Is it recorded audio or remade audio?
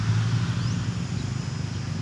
recorded